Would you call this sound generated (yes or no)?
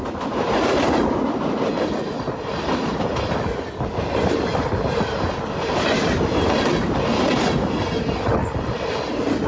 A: no